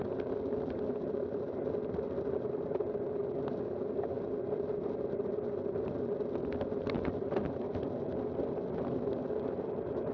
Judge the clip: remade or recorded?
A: recorded